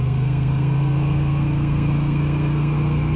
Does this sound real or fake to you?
fake